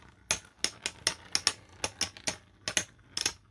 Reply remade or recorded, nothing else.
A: recorded